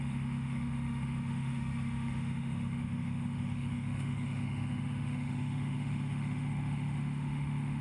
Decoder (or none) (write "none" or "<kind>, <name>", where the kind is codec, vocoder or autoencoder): autoencoder, DAC-VAE